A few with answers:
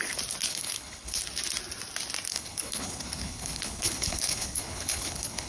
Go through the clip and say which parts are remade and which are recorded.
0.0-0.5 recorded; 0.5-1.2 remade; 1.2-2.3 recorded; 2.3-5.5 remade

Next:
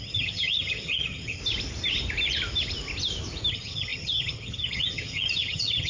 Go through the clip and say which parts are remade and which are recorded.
0.0-1.4 remade; 1.4-3.5 recorded; 3.5-5.9 remade